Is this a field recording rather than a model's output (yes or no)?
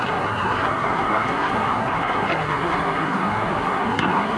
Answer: no